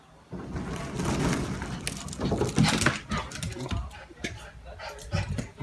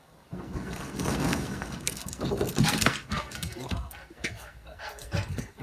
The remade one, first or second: second